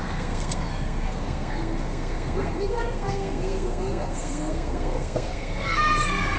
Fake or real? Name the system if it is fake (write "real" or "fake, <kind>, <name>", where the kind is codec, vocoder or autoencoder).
fake, codec, SNAC